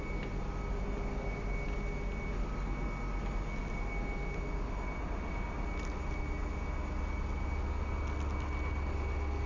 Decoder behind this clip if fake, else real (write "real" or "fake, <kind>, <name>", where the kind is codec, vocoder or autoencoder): real